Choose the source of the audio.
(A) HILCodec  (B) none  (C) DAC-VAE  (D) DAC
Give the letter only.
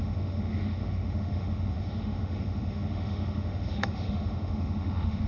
C